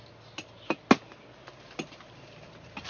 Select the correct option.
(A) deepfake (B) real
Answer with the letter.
B